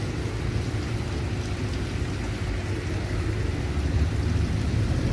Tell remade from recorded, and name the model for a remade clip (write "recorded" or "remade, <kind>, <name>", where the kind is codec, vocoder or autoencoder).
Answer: recorded